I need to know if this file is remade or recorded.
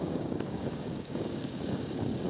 remade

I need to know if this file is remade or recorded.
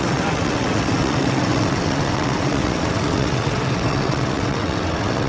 remade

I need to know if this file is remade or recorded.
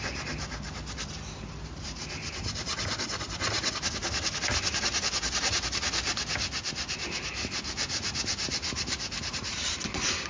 recorded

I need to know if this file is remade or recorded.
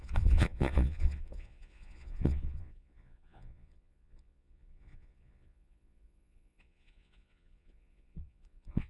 remade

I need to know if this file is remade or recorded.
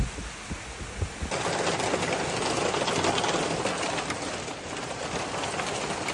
recorded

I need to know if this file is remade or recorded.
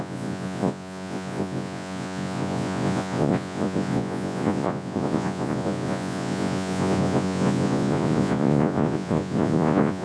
remade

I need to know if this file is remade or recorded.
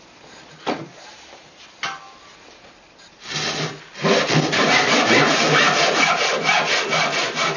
recorded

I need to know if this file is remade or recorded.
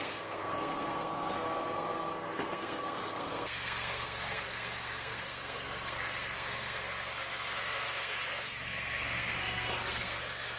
remade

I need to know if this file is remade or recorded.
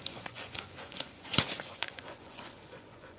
remade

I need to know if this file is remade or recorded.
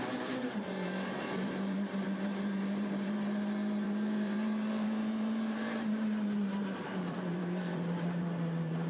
remade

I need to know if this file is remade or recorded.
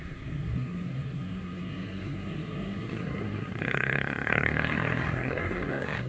remade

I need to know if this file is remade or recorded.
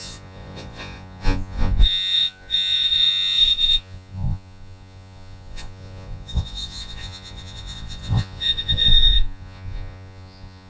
remade